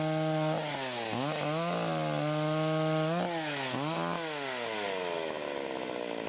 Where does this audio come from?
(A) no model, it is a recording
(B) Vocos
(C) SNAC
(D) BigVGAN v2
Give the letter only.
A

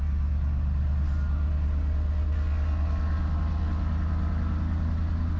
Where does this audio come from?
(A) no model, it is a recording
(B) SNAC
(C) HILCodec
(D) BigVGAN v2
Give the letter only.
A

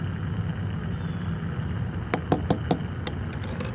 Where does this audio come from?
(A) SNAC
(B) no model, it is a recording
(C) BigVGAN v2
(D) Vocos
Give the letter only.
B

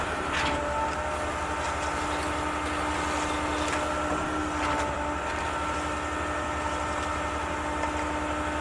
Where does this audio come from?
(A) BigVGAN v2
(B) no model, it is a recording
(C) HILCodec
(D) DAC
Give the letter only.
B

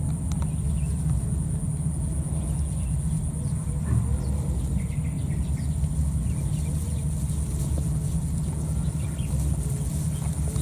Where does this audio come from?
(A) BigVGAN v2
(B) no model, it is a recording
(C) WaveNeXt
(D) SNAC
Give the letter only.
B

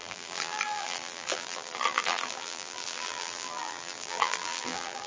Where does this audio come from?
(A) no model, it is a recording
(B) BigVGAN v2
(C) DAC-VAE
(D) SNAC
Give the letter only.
B